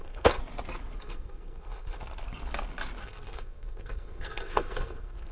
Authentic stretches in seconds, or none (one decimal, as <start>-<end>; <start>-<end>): 0.4-1.0; 2.0-3.0